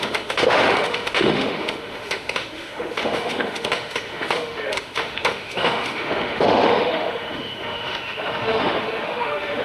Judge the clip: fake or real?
fake